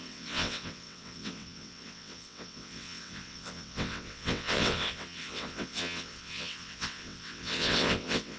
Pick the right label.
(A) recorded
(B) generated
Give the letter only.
B